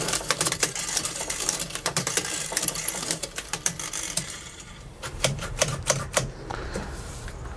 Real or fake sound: fake